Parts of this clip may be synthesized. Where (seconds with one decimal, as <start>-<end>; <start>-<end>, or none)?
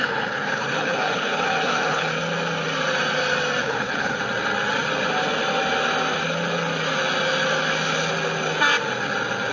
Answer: 0.0-2.1; 3.6-4.2